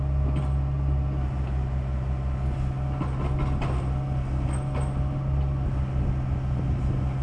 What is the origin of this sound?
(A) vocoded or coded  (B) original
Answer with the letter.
B